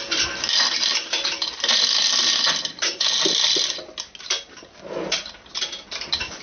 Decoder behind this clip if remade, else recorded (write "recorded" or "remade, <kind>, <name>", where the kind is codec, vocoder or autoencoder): recorded